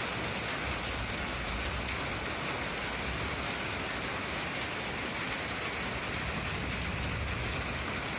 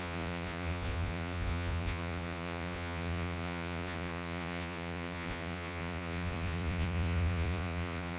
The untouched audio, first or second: first